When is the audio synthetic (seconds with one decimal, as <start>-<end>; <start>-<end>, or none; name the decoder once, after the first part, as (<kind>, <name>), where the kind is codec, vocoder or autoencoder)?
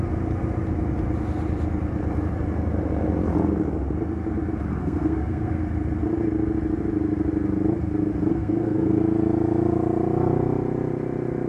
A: 4.8-5.6 (codec, SNAC); 8.3-9.0